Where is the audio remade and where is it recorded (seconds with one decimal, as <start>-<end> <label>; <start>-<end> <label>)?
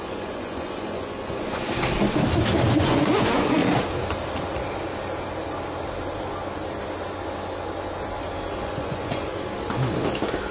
0.0-1.7 remade; 1.7-2.7 recorded; 2.7-3.6 remade; 3.6-8.6 recorded; 8.6-9.3 remade; 9.3-10.5 recorded